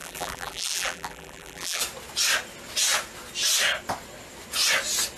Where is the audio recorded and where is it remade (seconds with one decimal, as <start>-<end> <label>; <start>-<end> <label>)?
0.0-1.8 remade; 1.8-5.2 recorded